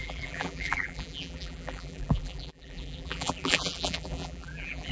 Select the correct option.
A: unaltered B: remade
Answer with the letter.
B